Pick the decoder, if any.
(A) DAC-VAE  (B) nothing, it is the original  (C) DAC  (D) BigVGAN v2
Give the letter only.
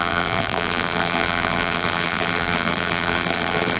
D